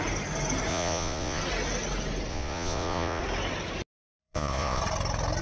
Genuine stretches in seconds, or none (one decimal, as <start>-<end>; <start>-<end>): 0.0-0.7; 1.4-2.3; 3.2-4.2; 4.8-5.4